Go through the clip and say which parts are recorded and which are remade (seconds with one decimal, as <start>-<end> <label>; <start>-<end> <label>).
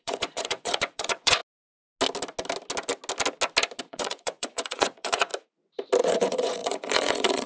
0.0-1.4 remade; 1.4-3.8 recorded; 3.8-5.3 remade; 5.3-6.0 recorded; 6.0-7.5 remade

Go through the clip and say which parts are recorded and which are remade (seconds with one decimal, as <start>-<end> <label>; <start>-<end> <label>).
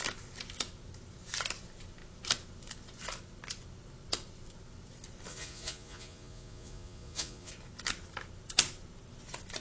0.0-5.3 recorded; 5.3-7.5 remade; 7.5-9.6 recorded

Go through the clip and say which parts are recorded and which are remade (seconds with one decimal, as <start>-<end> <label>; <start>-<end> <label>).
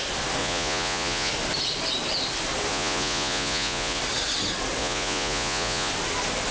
0.0-0.4 recorded; 0.4-1.3 remade; 1.3-2.7 recorded; 2.7-4.0 remade; 4.0-4.8 recorded; 4.8-5.9 remade; 5.9-6.5 recorded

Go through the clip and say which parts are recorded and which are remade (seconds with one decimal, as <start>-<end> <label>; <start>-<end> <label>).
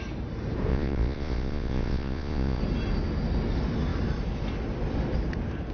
0.0-0.7 recorded; 0.7-2.6 remade; 2.6-5.7 recorded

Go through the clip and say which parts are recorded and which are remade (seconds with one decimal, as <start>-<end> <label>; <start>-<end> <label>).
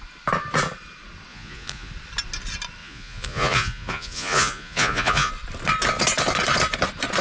0.0-1.3 recorded; 1.3-1.9 remade; 1.9-2.8 recorded; 2.8-5.3 remade; 5.3-7.2 recorded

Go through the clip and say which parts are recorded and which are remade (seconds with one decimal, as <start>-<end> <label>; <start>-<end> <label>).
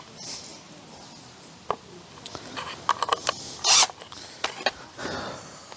0.0-5.8 recorded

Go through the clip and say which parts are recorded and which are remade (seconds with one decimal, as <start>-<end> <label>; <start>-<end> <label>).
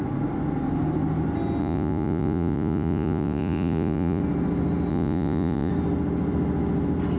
0.0-1.6 recorded; 1.6-4.2 remade; 4.2-4.9 recorded; 4.9-5.7 remade; 5.7-7.2 recorded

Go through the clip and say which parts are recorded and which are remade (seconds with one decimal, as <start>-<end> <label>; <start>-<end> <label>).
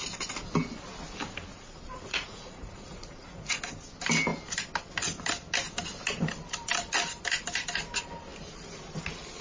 0.0-1.5 recorded; 1.5-3.6 remade; 3.6-9.4 recorded